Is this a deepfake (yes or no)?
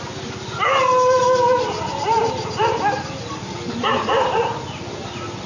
no